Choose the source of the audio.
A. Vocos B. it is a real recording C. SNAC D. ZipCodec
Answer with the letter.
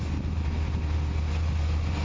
B